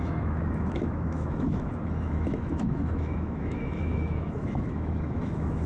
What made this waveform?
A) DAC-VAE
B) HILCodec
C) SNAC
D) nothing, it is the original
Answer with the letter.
A